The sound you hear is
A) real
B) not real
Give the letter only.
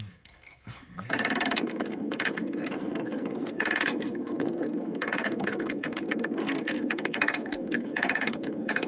B